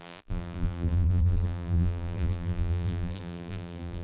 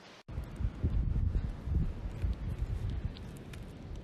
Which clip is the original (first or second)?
second